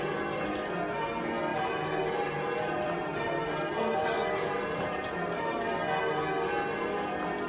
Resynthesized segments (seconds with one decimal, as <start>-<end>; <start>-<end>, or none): 1.5-5.6